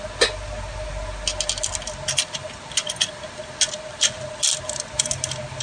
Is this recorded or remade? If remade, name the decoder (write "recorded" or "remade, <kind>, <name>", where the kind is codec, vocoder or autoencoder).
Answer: recorded